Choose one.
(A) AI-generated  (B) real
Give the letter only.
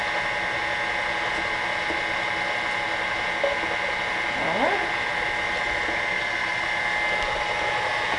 B